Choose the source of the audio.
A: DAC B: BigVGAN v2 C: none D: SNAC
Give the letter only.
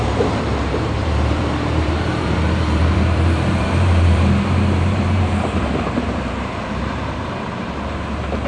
B